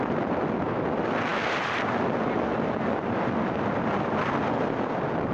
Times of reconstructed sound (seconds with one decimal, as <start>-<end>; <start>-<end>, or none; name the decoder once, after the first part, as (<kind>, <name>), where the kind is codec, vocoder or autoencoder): none